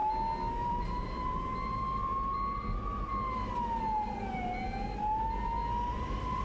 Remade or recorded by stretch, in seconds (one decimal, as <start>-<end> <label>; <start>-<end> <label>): 0.0-0.6 recorded; 0.6-2.1 remade; 2.1-5.9 recorded; 5.9-6.4 remade